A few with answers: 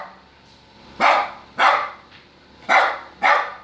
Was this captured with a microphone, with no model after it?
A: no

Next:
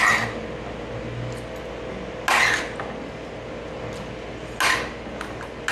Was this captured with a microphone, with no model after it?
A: yes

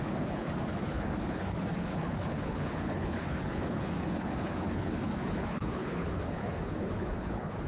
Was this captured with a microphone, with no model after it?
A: no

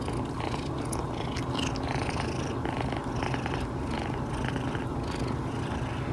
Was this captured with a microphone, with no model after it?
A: yes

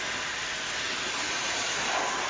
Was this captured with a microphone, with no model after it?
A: yes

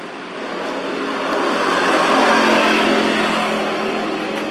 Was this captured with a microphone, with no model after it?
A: yes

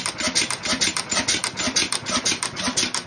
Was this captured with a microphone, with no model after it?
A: yes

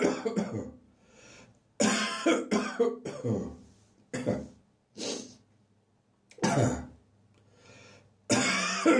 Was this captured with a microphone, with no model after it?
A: yes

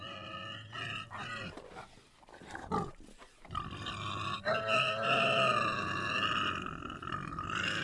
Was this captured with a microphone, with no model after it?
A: yes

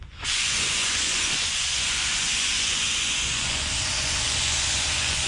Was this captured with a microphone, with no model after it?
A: no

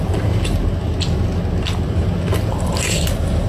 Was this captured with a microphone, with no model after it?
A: yes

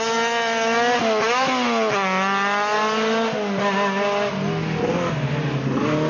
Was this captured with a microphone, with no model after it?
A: yes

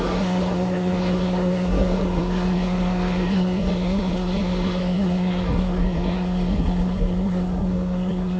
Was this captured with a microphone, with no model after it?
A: no